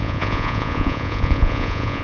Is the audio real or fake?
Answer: fake